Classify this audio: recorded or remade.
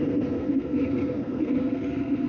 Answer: remade